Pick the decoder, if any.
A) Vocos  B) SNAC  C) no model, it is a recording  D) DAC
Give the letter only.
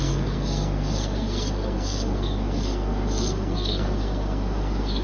B